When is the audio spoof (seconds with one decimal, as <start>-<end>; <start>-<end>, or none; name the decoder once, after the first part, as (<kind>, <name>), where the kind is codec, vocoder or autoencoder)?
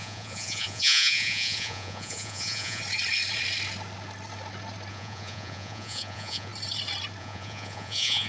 0.0-2.8 (vocoder, Vocos); 4.9-6.5; 7.2-8.3